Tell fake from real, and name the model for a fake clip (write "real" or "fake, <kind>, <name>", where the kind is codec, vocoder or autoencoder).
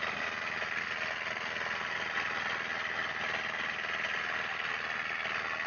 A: real